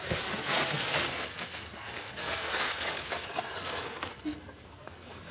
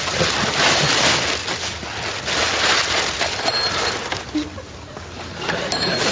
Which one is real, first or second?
second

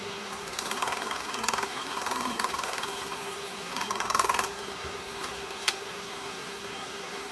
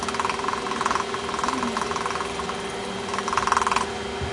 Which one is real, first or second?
second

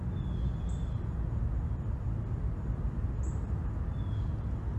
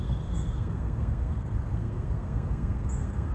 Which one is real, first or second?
first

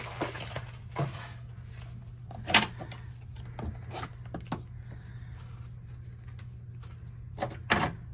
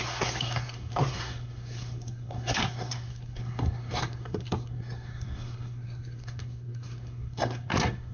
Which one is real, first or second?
first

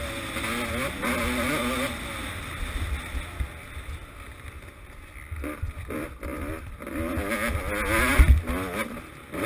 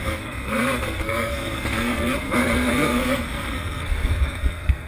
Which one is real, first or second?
first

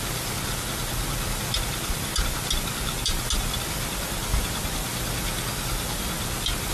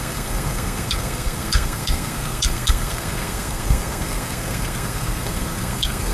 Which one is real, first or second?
first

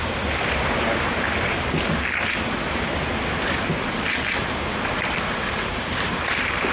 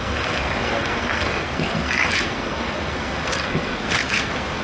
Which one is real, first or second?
first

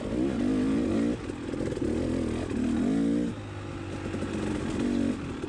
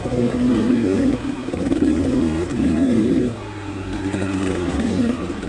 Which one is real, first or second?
first